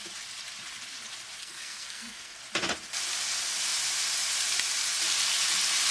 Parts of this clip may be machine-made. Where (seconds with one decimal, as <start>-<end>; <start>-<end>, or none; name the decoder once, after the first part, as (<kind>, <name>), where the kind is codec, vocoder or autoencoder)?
1.4-2.4 (codec, SNAC)